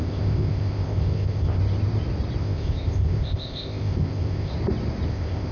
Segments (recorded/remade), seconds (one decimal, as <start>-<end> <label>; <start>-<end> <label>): 0.0-1.6 remade; 1.6-2.4 recorded; 2.4-4.5 remade; 4.5-5.1 recorded; 5.1-5.5 remade